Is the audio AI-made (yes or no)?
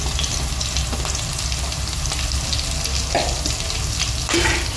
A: no